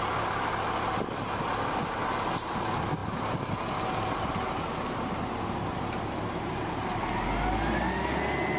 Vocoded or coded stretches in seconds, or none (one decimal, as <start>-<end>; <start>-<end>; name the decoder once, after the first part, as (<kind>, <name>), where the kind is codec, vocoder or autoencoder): none